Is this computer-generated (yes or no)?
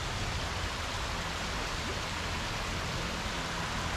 no